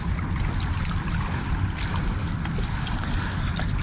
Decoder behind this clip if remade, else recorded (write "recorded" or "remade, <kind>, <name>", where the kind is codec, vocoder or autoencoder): recorded